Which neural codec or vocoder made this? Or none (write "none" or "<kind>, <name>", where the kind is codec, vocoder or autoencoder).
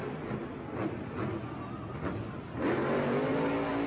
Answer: none